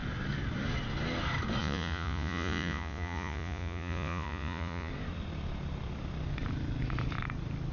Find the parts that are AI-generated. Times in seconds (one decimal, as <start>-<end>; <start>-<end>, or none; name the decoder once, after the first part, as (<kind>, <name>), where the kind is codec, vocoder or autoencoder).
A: 1.6-4.9 (vocoder, Vocos)